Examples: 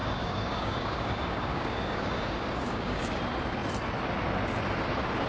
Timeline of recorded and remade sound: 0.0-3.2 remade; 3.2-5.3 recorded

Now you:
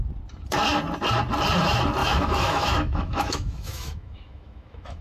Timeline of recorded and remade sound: 0.0-2.0 recorded; 2.0-5.0 remade

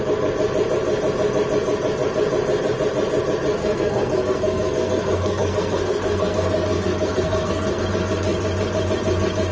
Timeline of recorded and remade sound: 0.0-3.6 recorded; 3.6-7.8 remade; 7.8-9.5 recorded

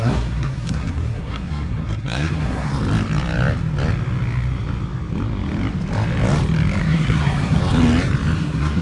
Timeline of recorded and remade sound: 0.0-2.7 remade; 2.7-6.8 recorded; 6.8-7.6 remade; 7.6-8.4 recorded; 8.4-8.8 remade

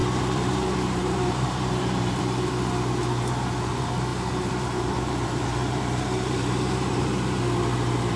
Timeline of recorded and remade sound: 0.0-2.5 remade; 2.5-4.1 recorded; 4.1-7.4 remade; 7.4-8.2 recorded